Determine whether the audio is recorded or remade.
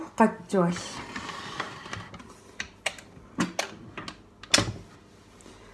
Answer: recorded